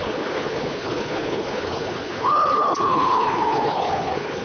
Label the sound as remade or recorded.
remade